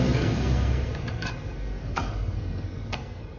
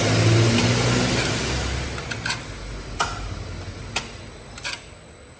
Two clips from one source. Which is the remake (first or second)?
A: first